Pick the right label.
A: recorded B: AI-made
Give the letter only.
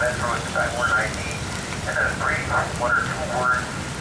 A